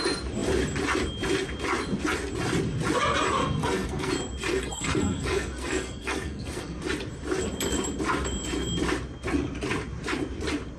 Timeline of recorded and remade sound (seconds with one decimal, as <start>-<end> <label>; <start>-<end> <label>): 0.0-3.4 recorded; 3.4-4.1 remade; 4.1-4.5 recorded; 4.5-6.8 remade; 6.8-10.8 recorded